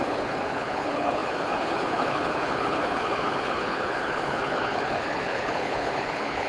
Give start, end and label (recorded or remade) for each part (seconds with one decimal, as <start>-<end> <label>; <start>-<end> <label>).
0.0-6.5 remade